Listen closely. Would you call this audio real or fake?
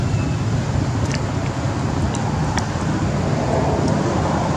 real